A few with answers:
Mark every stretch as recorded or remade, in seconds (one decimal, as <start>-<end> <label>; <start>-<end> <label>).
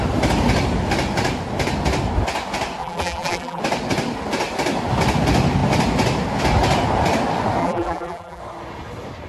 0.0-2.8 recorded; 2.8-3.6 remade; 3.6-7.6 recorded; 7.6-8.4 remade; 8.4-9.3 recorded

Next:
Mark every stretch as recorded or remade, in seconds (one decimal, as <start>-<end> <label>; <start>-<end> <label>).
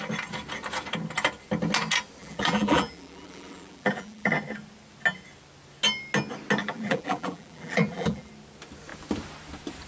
0.0-2.2 recorded; 2.2-4.3 remade; 4.3-6.6 recorded; 6.6-8.3 remade; 8.3-9.9 recorded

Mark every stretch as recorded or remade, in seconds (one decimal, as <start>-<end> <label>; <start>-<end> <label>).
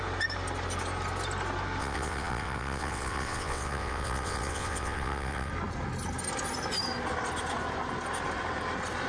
0.0-1.8 recorded; 1.8-5.5 remade; 5.5-9.1 recorded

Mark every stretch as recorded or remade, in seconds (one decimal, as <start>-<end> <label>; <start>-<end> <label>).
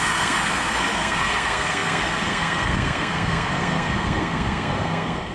0.0-5.3 remade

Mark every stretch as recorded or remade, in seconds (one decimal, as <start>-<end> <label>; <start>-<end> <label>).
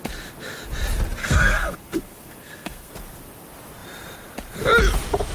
0.0-1.2 recorded; 1.2-2.9 remade; 2.9-5.3 recorded